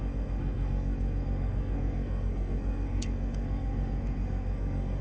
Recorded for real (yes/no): no